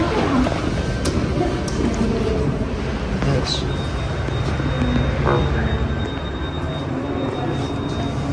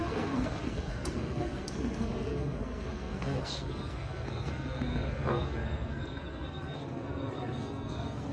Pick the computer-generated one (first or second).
second